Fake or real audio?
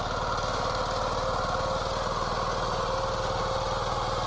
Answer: real